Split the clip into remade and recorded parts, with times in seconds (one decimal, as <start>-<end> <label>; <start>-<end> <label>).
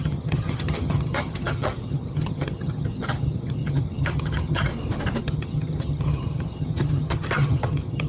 0.0-4.7 remade; 4.7-5.2 recorded; 5.2-8.1 remade